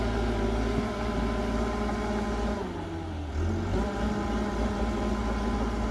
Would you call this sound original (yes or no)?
yes